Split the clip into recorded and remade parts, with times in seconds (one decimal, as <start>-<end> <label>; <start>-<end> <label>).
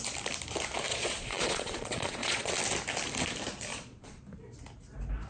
0.0-0.9 recorded; 0.9-2.5 remade; 2.5-3.7 recorded; 3.7-4.2 remade; 4.2-5.3 recorded